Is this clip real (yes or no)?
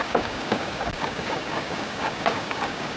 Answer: no